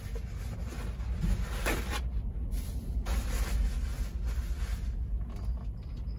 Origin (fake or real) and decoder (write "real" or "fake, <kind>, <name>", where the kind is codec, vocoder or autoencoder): real